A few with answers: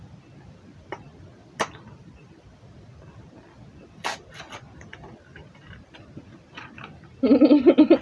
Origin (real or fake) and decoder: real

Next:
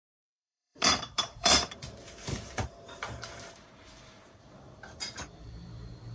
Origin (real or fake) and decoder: fake, vocoder, BigVGAN v2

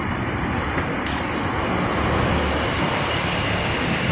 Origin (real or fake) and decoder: real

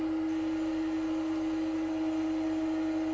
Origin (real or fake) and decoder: real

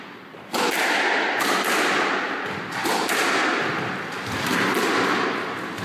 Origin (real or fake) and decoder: real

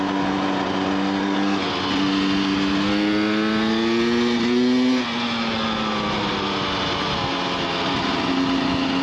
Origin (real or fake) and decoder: real